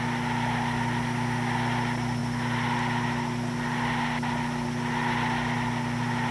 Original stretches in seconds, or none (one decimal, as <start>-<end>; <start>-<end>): 0.0-6.3